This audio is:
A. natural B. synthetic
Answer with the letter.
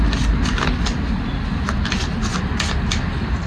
A